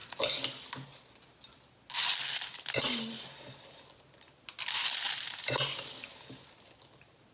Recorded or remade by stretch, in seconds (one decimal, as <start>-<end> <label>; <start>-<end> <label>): 0.0-7.3 recorded